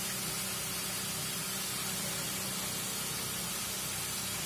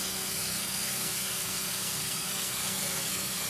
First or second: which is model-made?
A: second